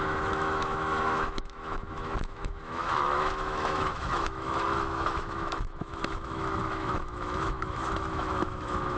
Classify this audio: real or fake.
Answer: fake